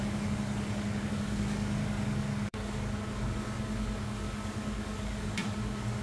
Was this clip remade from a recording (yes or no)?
yes